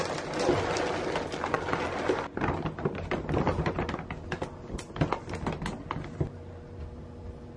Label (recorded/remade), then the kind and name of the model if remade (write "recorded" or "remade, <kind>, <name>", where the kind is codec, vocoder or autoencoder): recorded